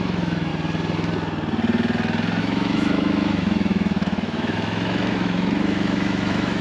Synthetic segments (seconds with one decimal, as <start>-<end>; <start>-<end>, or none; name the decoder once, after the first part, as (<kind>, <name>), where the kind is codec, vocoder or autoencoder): 0.0-0.5 (autoencoder, DAC-VAE); 2.4-6.6